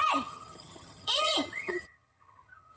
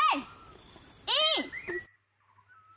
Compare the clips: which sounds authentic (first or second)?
second